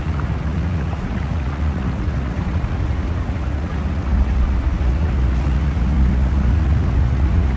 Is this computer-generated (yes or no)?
yes